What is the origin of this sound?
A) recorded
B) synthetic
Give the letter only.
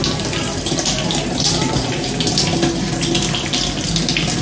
A